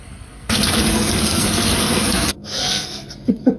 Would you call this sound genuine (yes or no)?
no